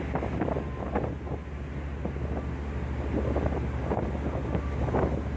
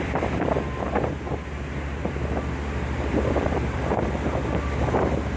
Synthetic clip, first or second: second